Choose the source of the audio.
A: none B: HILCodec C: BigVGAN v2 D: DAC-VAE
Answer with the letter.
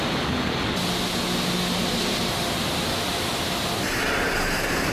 A